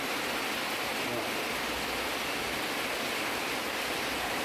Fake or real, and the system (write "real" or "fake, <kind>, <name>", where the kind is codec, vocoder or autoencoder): real